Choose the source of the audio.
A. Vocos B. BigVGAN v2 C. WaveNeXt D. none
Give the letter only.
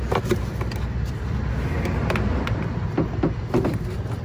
D